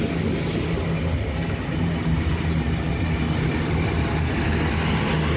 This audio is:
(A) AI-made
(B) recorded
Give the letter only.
B